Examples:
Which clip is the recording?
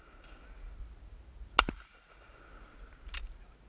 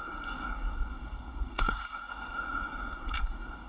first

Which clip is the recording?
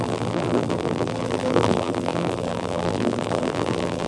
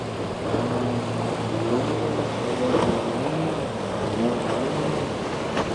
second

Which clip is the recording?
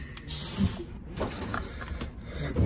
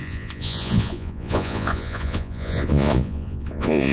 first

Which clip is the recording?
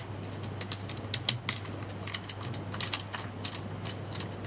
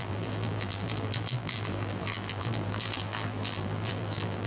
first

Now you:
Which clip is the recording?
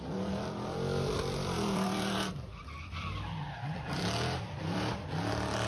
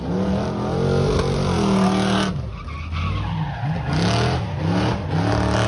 second